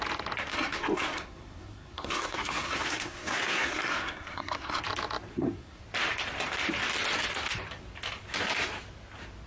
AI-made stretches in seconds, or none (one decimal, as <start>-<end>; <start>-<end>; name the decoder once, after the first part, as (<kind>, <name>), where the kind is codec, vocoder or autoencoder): 0.5-4.8 (codec, SNAC); 5.3-5.8